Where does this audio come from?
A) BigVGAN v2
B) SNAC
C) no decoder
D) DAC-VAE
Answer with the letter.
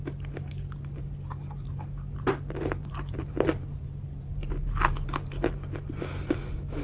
C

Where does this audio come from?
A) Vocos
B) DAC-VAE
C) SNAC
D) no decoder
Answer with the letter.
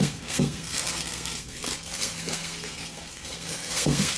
C